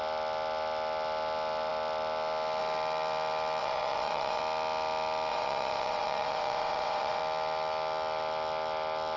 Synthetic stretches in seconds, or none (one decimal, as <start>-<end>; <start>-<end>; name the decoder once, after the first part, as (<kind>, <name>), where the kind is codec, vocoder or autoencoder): 3.6-4.4 (vocoder, WaveNeXt); 5.3-7.2